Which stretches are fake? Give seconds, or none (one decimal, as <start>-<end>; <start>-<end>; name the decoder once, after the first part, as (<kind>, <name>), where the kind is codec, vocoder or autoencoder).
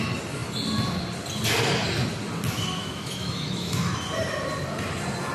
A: 2.8-4.0 (autoencoder, DAC-VAE)